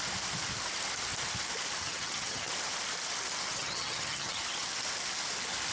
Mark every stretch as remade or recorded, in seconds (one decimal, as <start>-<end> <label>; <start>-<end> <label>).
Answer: 0.0-1.8 recorded; 1.8-2.5 remade; 2.5-3.5 recorded; 3.5-4.4 remade; 4.4-5.7 recorded